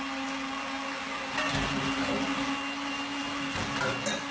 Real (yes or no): yes